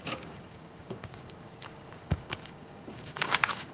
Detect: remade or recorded remade